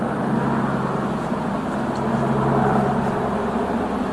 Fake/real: fake